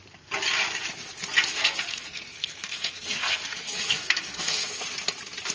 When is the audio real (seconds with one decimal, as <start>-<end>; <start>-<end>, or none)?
0.0-1.5; 4.8-5.5